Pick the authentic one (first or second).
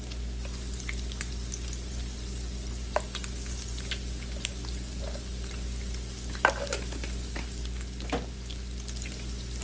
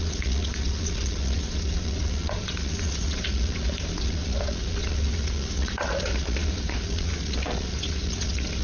first